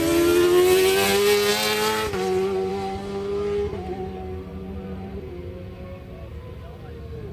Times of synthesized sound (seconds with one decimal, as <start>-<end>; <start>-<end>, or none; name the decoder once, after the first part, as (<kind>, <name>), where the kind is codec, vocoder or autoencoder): 4.5-5.3 (vocoder, BigVGAN v2)